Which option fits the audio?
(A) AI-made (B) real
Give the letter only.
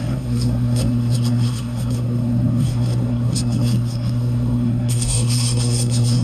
A